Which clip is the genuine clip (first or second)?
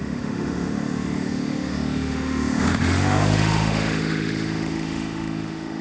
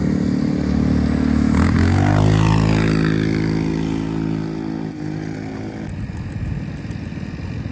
second